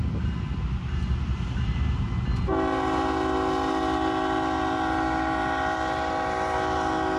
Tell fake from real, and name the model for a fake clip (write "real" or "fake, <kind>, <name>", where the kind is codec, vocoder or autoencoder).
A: real